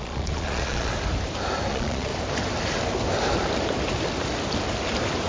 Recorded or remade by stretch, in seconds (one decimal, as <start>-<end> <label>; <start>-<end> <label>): 0.0-0.9 remade; 0.9-1.7 recorded; 1.7-2.1 remade; 2.1-5.3 recorded